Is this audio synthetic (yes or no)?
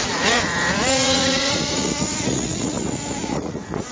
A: yes